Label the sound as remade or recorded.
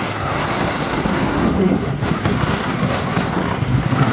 remade